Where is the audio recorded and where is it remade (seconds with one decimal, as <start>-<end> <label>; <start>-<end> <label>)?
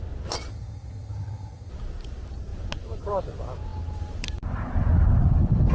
0.0-0.5 recorded; 0.5-1.7 remade; 1.7-5.7 recorded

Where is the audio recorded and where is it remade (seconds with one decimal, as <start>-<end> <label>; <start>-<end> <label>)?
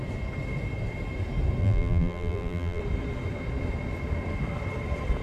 0.0-1.6 recorded; 1.6-2.8 remade; 2.8-5.2 recorded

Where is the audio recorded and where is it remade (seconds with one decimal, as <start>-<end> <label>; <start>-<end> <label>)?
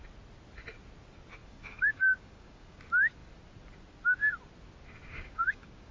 0.0-1.4 recorded; 1.4-2.8 remade; 2.8-5.1 recorded; 5.1-5.9 remade